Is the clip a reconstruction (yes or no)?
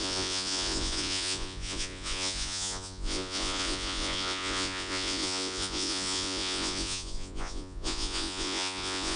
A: yes